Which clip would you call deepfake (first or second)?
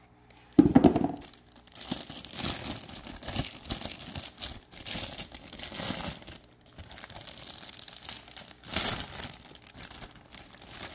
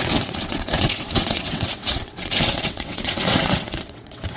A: second